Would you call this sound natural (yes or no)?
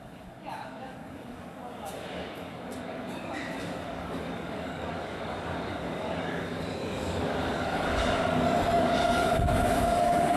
no